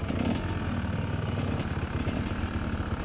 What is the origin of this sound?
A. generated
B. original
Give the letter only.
B